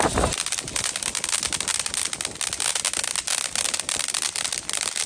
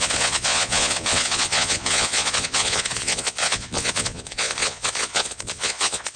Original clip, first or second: first